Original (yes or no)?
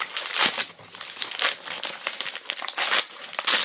yes